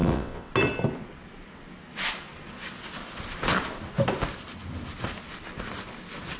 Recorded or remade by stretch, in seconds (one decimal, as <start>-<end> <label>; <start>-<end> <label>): 0.0-0.5 remade; 0.5-6.4 recorded